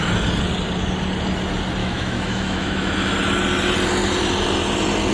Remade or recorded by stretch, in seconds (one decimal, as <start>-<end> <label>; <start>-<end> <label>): 0.0-1.8 recorded; 1.8-2.9 remade; 2.9-5.1 recorded